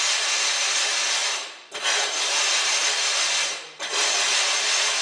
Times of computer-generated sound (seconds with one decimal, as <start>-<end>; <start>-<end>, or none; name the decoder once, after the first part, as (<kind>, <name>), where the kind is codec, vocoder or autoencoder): 1.2-4.2 (vocoder, BigVGAN v2)